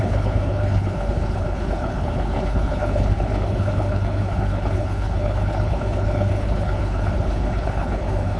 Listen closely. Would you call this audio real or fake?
fake